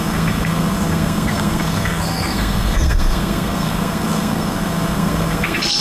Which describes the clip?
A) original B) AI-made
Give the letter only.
B